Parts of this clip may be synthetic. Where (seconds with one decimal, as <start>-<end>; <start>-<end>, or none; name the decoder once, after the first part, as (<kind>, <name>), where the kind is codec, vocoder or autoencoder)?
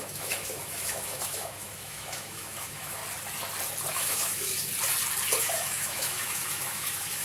0.0-3.0 (autoencoder, DAC-VAE); 3.9-4.5; 5.4-7.2